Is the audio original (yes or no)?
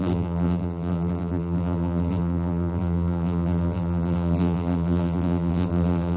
no